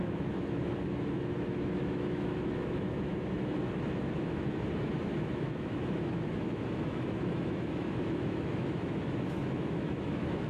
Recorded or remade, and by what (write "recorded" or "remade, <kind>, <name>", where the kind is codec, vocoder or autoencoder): remade, autoencoder, DAC-VAE